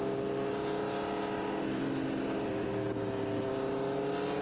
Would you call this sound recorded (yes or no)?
yes